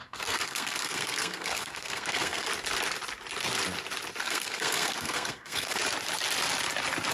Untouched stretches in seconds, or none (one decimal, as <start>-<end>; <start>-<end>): 2.5-4.2; 5.8-7.1